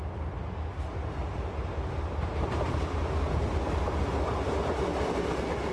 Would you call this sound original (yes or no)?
yes